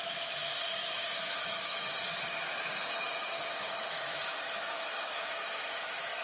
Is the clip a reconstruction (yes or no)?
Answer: yes